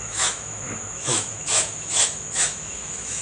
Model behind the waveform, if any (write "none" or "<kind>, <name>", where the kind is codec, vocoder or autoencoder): autoencoder, DAC-VAE